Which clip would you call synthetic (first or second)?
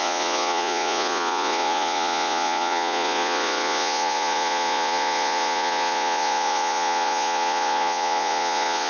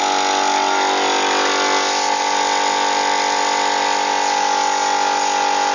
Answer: first